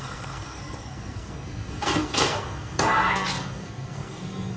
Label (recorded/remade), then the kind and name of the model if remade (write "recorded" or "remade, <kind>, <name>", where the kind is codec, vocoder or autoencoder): remade, codec, SNAC